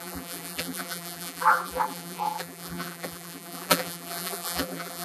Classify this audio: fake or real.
fake